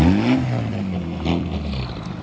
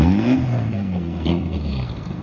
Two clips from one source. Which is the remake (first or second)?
second